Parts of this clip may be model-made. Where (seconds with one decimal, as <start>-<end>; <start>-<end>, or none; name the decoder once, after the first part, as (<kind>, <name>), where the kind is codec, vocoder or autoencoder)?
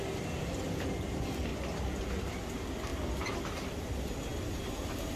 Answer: 1.5-2.3 (vocoder, BigVGAN v2)